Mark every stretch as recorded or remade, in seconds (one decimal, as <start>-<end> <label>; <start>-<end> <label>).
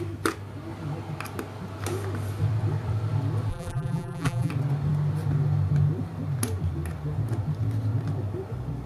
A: 0.0-3.5 recorded; 3.5-4.5 remade; 4.5-8.9 recorded